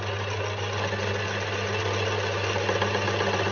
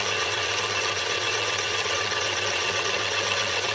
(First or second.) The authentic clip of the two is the first